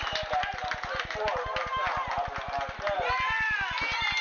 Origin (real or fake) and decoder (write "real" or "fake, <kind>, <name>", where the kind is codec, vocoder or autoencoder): real